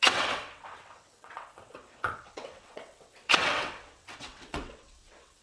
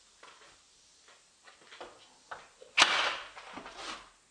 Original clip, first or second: second